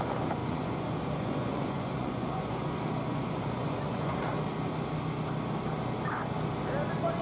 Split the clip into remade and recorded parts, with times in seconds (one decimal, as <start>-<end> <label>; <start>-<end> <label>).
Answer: 0.0-0.4 recorded; 0.4-2.7 remade; 2.7-3.1 recorded; 3.1-4.2 remade; 4.2-7.2 recorded